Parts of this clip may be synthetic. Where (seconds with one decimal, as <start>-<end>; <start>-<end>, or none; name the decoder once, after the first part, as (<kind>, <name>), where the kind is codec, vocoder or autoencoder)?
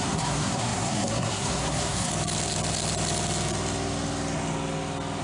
0.0-2.1 (codec, SNAC)